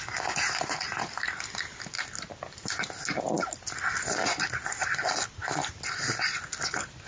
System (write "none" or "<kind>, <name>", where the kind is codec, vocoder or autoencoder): none